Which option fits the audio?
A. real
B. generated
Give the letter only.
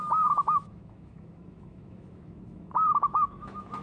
B